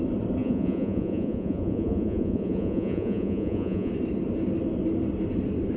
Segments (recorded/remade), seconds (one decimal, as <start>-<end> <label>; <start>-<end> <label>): 0.0-0.4 recorded; 0.4-3.9 remade; 3.9-5.8 recorded